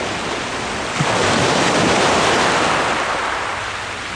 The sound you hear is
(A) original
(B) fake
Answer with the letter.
A